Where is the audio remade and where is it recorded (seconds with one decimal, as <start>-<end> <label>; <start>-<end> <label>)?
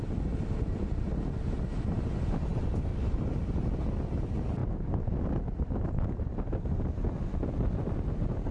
0.0-4.6 recorded; 4.6-5.3 remade; 5.3-8.5 recorded